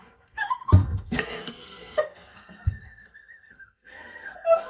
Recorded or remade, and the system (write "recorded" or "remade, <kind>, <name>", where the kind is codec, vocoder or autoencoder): remade, codec, SNAC